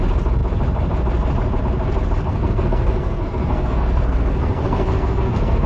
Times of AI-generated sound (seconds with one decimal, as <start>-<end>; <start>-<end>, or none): 2.3-5.7